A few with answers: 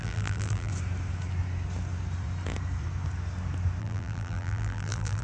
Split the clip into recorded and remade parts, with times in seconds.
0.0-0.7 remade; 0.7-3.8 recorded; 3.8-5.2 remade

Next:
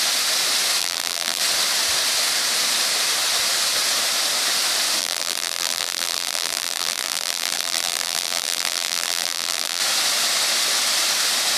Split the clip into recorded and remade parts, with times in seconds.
0.0-0.8 recorded; 0.8-1.4 remade; 1.4-5.0 recorded; 5.0-9.8 remade; 9.8-11.6 recorded